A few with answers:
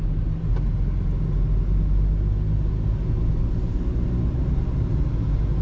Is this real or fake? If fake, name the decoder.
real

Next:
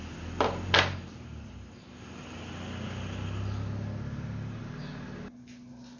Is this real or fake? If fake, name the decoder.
real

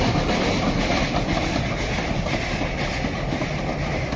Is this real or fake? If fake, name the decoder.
real